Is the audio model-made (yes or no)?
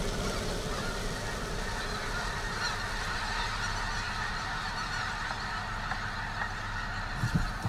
no